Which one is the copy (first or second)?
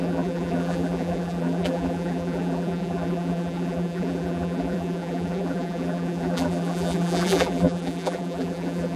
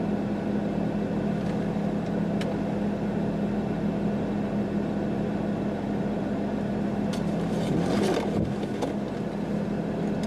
first